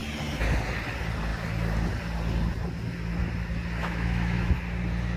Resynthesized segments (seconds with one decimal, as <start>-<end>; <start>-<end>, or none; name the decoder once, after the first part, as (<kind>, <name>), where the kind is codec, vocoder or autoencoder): 3.8-4.5 (autoencoder, DAC-VAE)